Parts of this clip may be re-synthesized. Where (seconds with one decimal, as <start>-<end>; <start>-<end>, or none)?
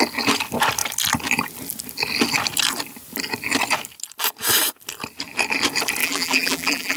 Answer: 6.0-7.0